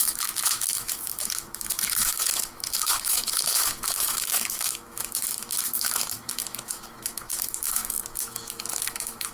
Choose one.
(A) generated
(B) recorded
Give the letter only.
A